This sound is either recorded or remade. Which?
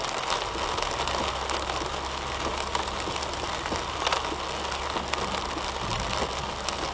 recorded